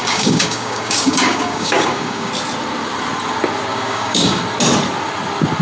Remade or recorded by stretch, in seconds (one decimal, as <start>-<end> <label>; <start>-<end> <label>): 0.0-2.3 remade; 2.3-3.7 recorded; 3.7-4.4 remade; 4.4-5.6 recorded